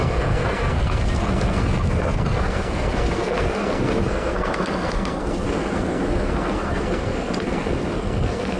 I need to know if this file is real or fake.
fake